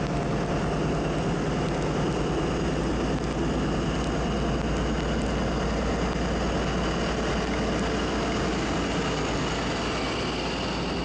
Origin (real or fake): real